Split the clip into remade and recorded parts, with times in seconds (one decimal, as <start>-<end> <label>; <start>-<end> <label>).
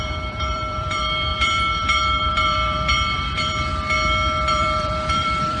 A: 0.0-3.7 remade; 3.7-4.5 recorded; 4.5-5.6 remade